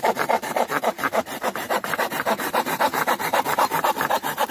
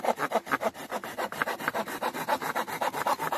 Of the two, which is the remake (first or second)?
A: first